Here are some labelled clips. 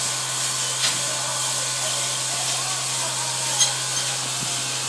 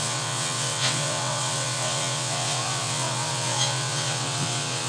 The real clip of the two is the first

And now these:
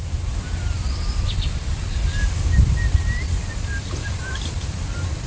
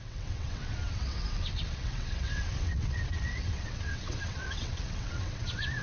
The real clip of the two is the first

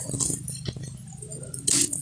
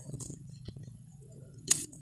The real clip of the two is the first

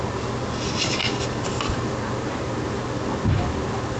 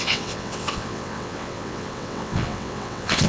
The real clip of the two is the first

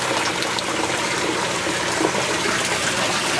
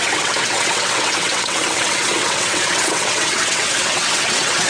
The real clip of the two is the first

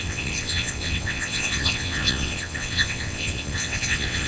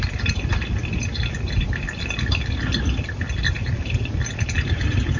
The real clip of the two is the second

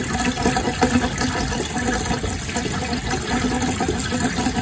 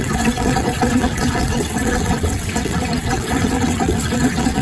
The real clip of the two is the first